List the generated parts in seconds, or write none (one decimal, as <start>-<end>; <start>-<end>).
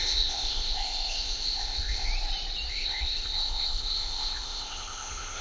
0.0-2.1; 2.7-5.4